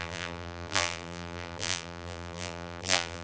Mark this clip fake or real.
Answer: fake